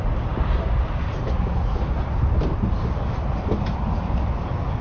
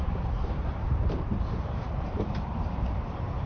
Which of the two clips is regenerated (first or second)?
second